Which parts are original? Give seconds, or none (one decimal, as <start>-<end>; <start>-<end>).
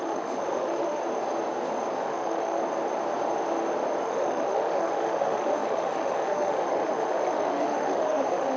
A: 1.0-1.9; 2.6-4.0